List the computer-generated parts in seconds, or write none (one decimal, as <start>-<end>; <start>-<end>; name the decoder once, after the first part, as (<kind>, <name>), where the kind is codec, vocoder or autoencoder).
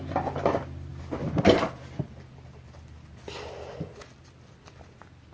none